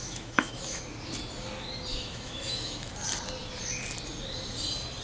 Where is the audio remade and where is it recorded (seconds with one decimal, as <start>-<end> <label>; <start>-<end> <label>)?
0.0-0.8 remade; 0.8-1.9 recorded; 1.9-2.9 remade; 2.9-5.0 recorded